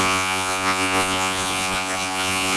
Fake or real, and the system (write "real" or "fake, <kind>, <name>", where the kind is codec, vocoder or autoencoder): fake, vocoder, Vocos